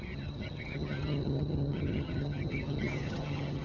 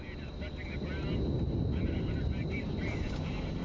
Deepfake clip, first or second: first